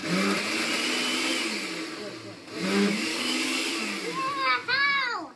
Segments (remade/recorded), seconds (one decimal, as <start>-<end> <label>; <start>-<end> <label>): 0.0-3.1 recorded; 3.1-3.7 remade; 3.7-5.4 recorded